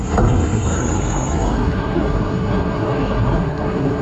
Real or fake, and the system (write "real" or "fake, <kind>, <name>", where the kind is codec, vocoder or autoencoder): fake, codec, SNAC